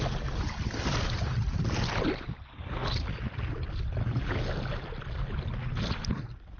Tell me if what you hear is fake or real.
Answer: real